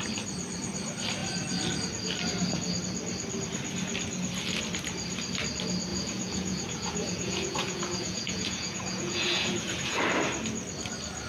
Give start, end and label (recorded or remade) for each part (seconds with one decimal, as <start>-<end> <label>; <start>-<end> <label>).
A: 0.0-5.9 recorded; 5.9-10.0 remade; 10.0-11.3 recorded